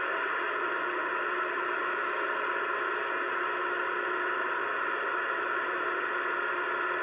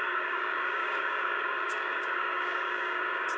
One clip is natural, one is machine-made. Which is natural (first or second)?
first